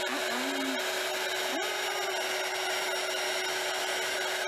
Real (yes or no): yes